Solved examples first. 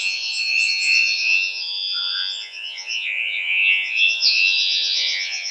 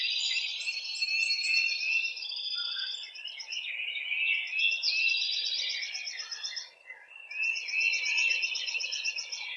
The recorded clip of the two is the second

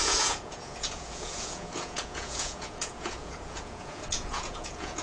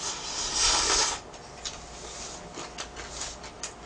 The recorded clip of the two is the second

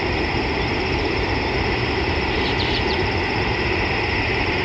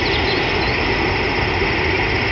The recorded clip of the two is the second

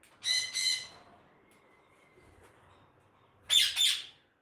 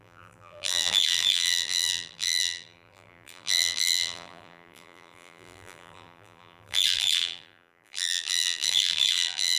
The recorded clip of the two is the first